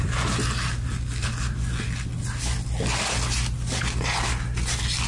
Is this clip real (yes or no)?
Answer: yes